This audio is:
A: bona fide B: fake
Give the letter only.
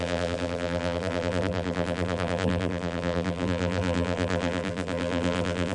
B